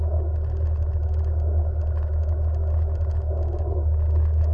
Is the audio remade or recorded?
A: recorded